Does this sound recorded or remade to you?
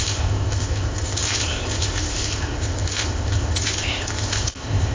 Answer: remade